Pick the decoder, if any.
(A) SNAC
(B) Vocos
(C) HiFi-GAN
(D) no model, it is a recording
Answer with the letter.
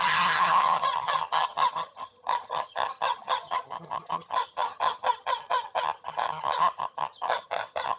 C